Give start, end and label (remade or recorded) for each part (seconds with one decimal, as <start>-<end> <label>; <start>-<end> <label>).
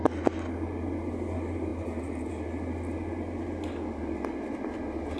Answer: 0.0-5.2 recorded